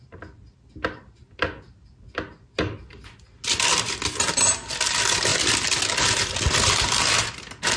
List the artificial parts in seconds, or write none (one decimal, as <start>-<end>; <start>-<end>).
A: none